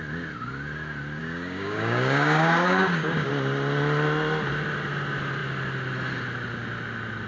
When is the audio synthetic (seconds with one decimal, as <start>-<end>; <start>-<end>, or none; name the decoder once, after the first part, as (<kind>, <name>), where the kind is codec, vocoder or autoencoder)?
1.2-3.3 (codec, DAC)